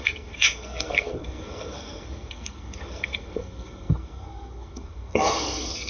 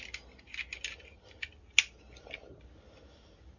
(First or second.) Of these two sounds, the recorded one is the second